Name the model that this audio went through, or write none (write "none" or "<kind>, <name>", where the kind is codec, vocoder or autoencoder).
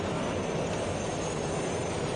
none